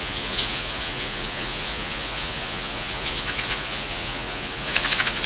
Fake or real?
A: fake